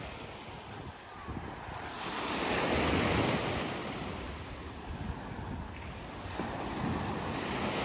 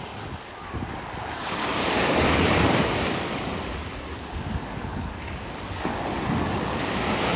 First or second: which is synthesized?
second